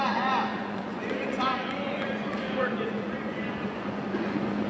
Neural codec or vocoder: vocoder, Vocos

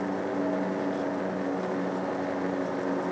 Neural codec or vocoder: none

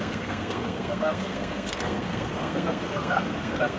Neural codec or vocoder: codec, SNAC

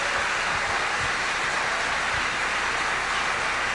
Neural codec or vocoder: none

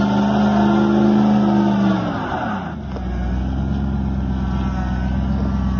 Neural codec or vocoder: none